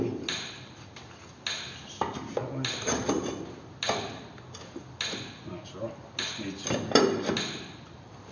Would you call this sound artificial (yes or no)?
no